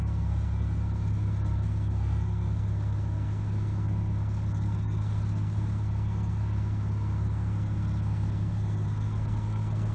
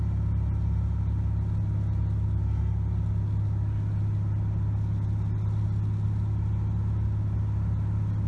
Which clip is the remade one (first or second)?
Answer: first